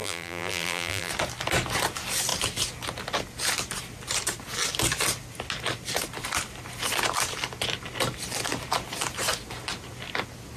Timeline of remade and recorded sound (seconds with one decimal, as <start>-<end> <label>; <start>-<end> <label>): 0.0-1.1 remade; 1.1-10.6 recorded